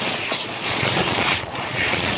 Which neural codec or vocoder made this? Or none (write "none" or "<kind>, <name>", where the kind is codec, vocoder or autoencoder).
vocoder, Vocos